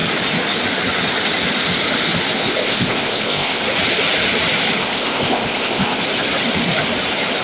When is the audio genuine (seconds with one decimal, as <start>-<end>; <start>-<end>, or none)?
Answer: 0.0-2.4; 3.6-4.8; 6.0-7.4